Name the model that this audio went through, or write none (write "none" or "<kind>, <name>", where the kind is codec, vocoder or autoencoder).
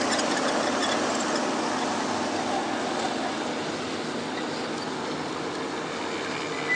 none